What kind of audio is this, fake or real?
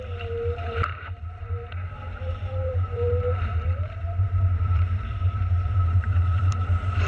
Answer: fake